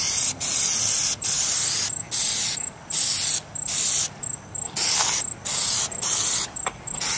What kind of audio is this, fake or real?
real